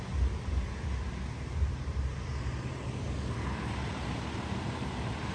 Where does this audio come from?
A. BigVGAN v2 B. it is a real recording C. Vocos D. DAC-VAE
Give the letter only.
B